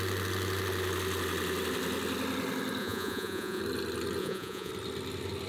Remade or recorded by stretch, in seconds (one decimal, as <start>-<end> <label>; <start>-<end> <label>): 0.0-2.8 recorded; 2.8-3.6 remade; 3.6-4.2 recorded; 4.2-4.7 remade; 4.7-5.5 recorded